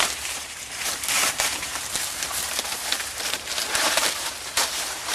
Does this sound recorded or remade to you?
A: remade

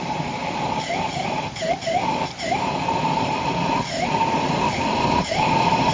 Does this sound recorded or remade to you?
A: remade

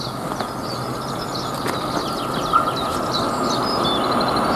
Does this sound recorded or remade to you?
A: recorded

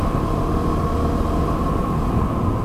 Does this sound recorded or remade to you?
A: recorded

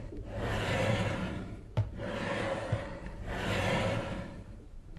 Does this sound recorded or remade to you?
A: remade